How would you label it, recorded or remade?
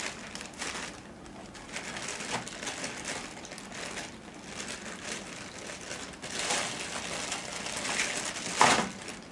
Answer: recorded